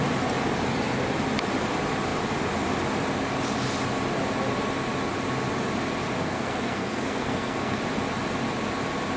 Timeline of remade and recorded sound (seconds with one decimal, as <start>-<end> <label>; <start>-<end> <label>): 0.0-6.2 recorded; 6.2-7.8 remade; 7.8-9.2 recorded